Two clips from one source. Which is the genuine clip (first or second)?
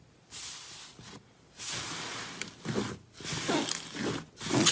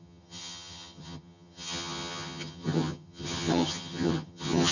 first